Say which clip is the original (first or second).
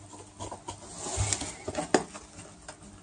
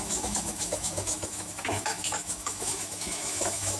first